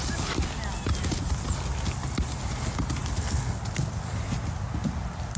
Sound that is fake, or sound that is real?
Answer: real